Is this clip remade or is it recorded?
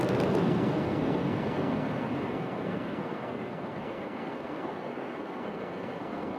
remade